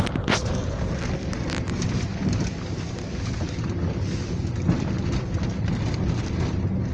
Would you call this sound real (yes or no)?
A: yes